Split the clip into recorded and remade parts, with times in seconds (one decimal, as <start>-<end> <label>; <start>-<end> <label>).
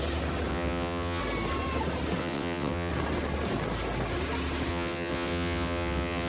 0.0-0.5 recorded; 0.5-1.2 remade; 1.2-2.2 recorded; 2.2-2.9 remade; 2.9-4.7 recorded; 4.7-6.3 remade